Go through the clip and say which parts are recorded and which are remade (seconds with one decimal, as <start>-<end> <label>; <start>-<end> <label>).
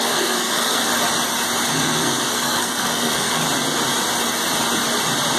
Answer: 0.0-0.9 remade; 0.9-1.7 recorded; 1.7-3.4 remade; 3.4-5.4 recorded